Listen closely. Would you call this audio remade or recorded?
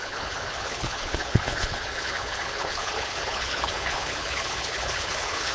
remade